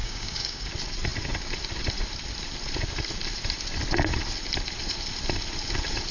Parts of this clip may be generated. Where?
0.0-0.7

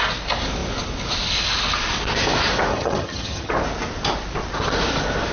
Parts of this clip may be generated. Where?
2.7-3.5

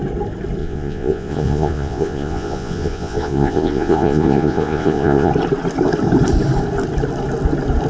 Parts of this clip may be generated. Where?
0.6-5.3

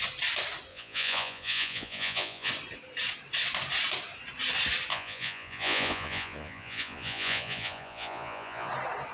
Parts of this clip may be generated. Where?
0.7-2.5; 4.9-8.7

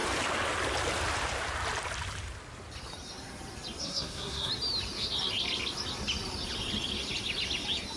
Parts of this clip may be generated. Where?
3.8-4.5

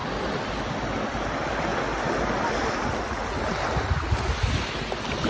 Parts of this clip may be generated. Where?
0.0-0.7